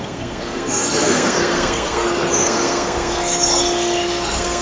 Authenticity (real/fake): fake